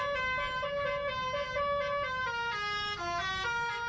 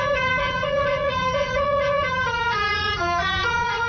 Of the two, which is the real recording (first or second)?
first